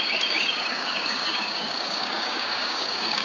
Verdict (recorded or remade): remade